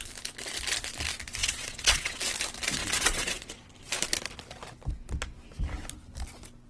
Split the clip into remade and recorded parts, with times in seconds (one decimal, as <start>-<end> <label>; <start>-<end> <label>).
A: 0.0-1.4 recorded; 1.4-2.2 remade; 2.2-2.8 recorded; 2.8-3.7 remade; 3.7-6.7 recorded